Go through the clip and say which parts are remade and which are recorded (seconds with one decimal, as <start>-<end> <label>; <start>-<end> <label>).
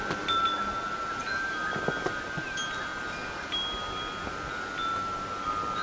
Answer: 0.0-5.8 recorded